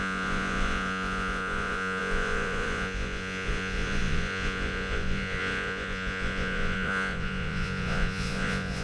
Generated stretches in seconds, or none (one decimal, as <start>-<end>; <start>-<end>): 0.0-8.8